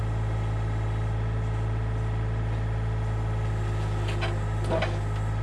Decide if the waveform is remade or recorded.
recorded